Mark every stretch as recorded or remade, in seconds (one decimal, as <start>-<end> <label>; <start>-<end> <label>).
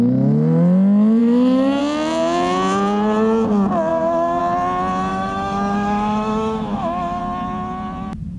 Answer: 0.0-1.2 recorded; 1.2-1.8 remade; 1.8-3.9 recorded; 3.9-4.4 remade; 4.4-5.1 recorded; 5.1-7.2 remade; 7.2-8.4 recorded